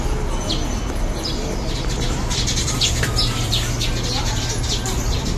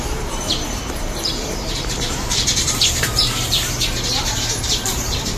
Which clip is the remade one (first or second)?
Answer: second